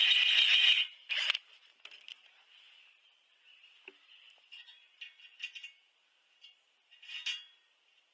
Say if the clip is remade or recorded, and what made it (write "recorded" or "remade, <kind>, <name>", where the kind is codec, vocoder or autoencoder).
recorded